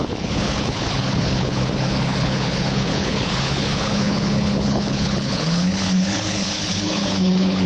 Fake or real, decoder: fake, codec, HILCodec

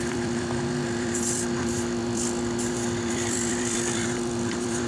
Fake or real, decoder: fake, vocoder, BigVGAN v2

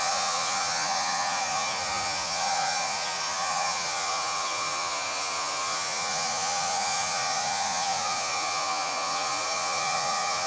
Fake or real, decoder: fake, vocoder, Vocos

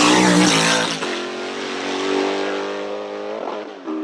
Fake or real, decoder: real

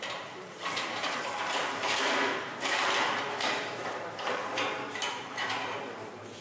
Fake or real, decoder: fake, vocoder, BigVGAN v2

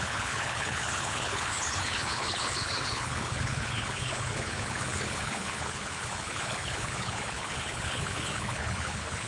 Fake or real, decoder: fake, codec, HILCodec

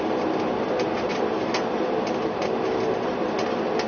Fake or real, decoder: real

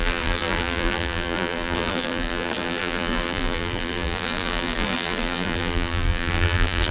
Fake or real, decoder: fake, vocoder, BigVGAN v2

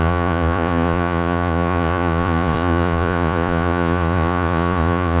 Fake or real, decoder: fake, vocoder, Vocos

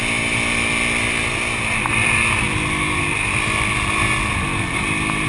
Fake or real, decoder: real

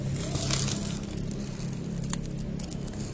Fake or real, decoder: real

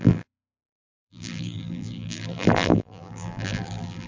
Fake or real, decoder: fake, vocoder, BigVGAN v2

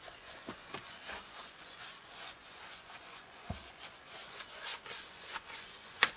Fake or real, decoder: fake, vocoder, Vocos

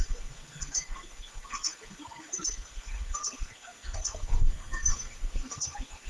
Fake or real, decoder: fake, codec, SNAC